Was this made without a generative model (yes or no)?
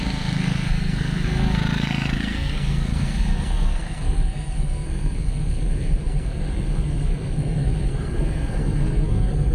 no